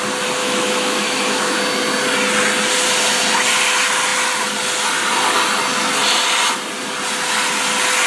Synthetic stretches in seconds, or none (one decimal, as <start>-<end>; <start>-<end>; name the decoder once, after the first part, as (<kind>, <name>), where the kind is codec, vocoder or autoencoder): 0.4-1.5 (autoencoder, DAC-VAE)